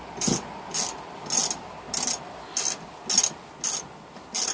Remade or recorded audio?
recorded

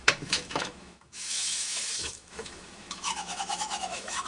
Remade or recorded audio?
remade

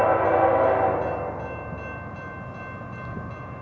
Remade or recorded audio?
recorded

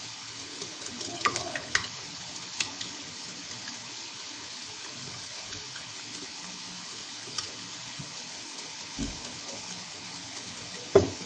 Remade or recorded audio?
remade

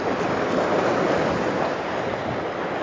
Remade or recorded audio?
recorded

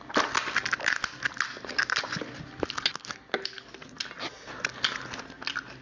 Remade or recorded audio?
recorded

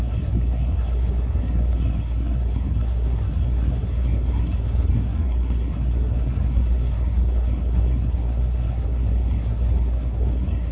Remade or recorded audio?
remade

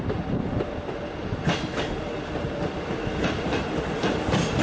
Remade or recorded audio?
recorded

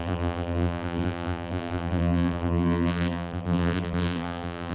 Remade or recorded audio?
remade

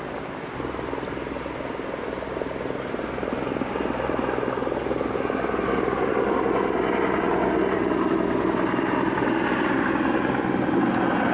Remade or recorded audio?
recorded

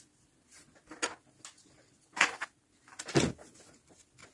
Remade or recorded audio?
recorded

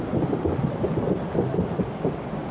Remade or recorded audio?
recorded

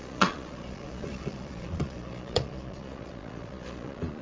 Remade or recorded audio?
remade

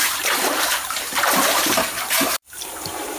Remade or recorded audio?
remade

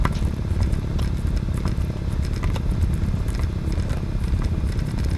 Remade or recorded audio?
recorded